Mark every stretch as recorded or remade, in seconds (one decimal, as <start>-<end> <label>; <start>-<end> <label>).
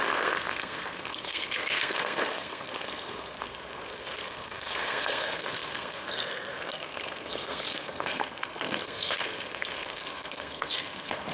0.0-11.3 remade